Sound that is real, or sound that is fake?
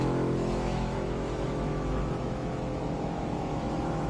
fake